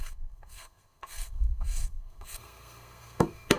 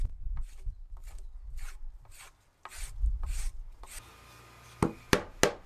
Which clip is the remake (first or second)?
first